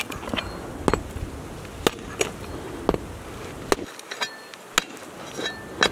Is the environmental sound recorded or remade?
recorded